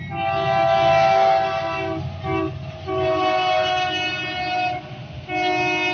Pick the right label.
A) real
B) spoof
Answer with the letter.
A